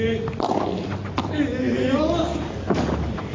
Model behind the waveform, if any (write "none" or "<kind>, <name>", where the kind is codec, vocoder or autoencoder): none